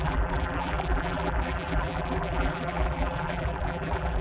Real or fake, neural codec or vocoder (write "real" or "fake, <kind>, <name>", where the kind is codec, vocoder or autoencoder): fake, vocoder, BigVGAN v2